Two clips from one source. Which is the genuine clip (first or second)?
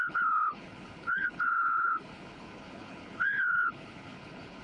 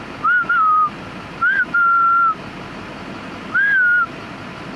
second